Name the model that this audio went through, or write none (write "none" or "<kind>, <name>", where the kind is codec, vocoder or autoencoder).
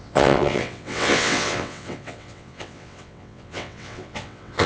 vocoder, WaveNeXt